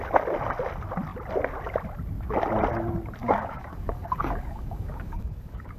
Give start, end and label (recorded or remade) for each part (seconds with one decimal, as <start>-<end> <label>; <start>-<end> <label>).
0.0-3.2 recorded; 3.2-5.8 remade